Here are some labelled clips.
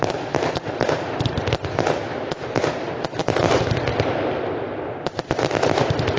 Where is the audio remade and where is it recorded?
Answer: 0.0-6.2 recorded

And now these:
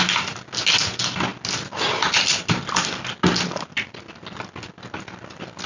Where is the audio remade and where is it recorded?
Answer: 0.0-5.7 recorded

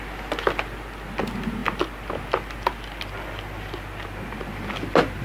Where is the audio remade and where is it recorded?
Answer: 0.0-5.2 recorded

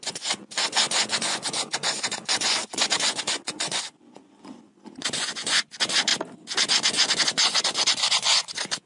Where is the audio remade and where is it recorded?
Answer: 0.0-6.1 remade; 6.1-6.7 recorded; 6.7-8.9 remade